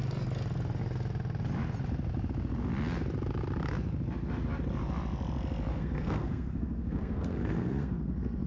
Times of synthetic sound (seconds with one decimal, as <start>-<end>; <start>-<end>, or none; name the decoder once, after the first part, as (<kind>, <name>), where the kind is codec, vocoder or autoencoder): 5.7-8.5 (codec, SNAC)

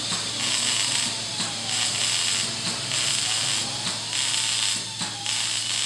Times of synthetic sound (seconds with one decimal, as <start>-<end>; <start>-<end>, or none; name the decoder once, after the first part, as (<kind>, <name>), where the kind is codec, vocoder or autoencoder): none

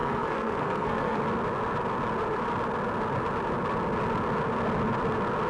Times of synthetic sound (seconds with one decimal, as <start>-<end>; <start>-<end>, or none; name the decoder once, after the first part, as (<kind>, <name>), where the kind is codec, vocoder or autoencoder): 0.0-1.2 (codec, SNAC)

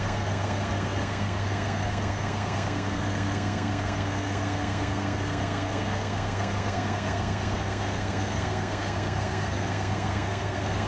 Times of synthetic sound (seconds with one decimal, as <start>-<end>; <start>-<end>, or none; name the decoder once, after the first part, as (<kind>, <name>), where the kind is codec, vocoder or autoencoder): 0.0-10.9 (codec, SNAC)

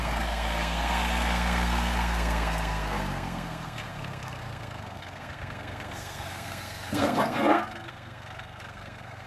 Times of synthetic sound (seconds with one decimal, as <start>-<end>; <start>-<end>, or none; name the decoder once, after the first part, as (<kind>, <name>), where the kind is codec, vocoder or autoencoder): 0.0-9.3 (codec, SNAC)

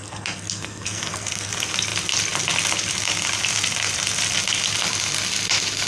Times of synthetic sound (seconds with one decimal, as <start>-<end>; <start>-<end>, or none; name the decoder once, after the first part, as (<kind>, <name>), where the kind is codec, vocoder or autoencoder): 0.0-1.5 (codec, SNAC)